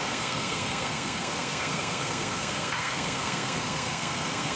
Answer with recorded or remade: remade